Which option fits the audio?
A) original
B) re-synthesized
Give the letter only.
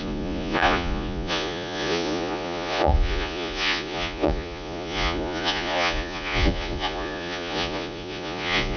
B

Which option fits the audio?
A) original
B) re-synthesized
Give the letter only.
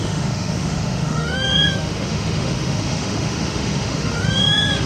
B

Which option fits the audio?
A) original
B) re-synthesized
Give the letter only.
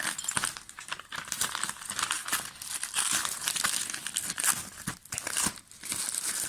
A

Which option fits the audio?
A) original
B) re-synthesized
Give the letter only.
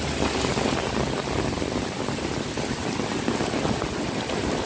A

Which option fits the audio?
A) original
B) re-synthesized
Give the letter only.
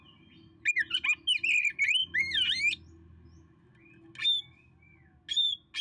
A